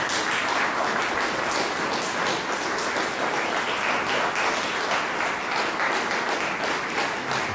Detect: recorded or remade recorded